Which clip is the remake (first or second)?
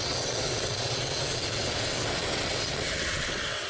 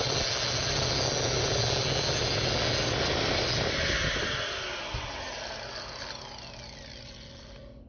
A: first